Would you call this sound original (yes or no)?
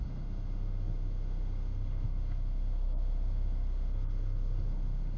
no